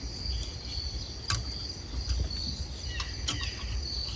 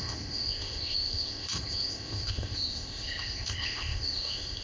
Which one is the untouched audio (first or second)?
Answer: first